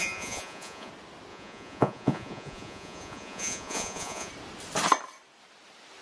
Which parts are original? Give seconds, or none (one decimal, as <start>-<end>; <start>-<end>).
0.9-1.3; 4.3-6.0

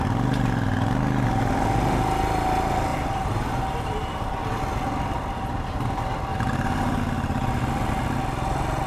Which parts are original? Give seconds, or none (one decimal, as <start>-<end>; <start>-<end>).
0.0-2.9; 4.6-6.3; 7.0-8.9

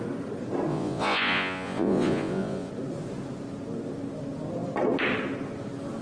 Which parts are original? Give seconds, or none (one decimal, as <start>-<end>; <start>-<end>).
0.0-0.7; 2.7-6.0

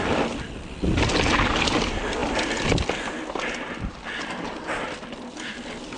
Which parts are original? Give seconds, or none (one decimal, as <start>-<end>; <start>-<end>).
0.0-6.0